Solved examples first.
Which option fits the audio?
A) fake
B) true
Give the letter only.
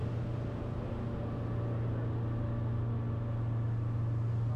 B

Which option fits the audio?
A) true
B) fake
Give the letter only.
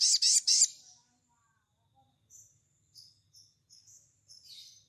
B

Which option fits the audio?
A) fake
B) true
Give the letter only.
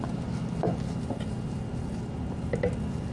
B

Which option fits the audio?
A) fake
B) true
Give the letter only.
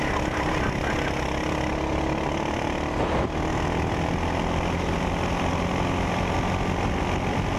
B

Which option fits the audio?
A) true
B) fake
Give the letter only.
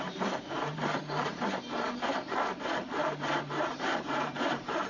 B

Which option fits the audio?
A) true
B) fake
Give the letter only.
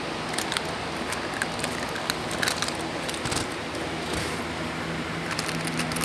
A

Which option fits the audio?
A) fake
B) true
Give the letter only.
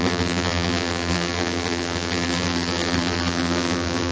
A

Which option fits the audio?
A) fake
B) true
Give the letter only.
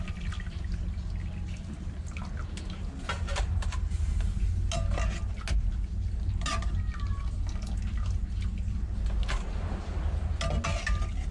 B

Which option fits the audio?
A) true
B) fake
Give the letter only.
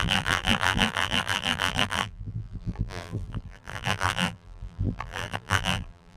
B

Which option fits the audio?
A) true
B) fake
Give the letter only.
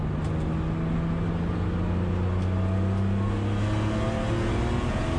A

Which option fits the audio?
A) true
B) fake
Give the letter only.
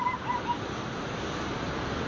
B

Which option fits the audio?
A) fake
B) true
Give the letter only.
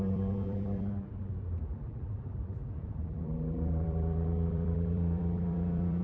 A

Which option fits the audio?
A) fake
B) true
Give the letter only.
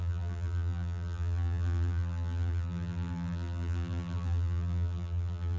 A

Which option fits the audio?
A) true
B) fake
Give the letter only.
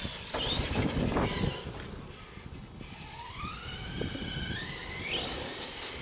A